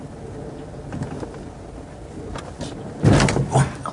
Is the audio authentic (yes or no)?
yes